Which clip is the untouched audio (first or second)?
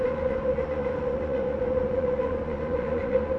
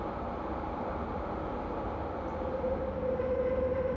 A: second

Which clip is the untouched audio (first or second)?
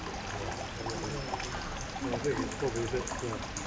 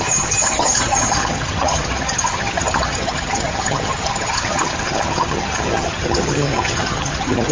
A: first